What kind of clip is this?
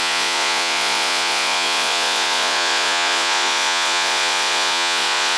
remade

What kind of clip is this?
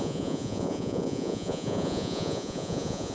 remade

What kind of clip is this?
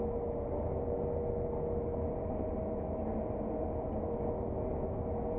recorded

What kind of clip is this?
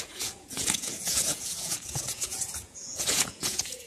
remade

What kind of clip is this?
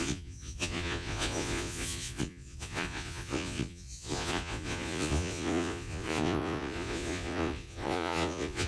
remade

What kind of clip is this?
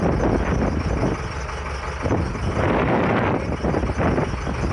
recorded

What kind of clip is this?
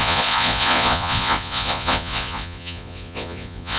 remade